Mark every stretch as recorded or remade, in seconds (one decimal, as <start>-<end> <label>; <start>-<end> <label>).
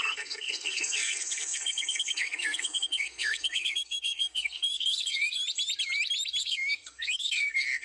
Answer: 0.0-5.4 remade; 5.4-6.4 recorded; 6.4-7.8 remade